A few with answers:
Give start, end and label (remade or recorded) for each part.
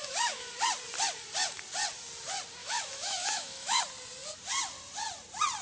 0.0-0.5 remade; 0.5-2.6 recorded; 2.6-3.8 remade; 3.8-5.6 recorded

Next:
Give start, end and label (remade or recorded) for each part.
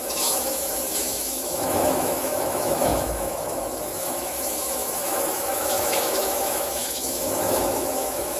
0.0-8.4 remade